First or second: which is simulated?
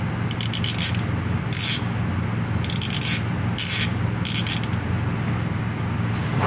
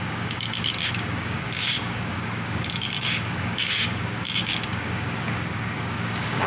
second